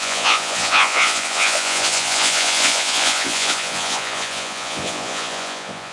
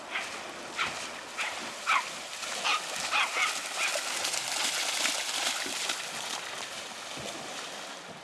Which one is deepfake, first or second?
first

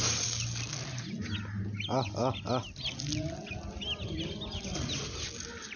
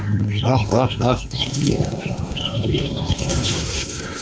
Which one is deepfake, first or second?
second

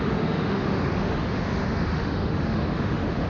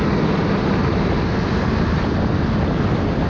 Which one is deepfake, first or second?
first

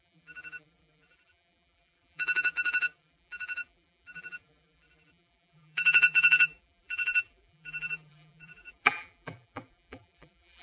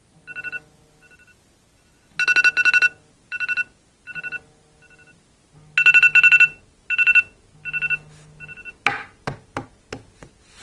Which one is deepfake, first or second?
first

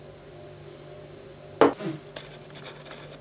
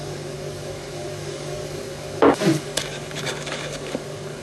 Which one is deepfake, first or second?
second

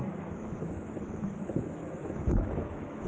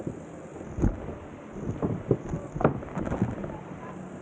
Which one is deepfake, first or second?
first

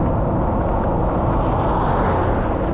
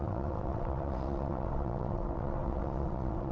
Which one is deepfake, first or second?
second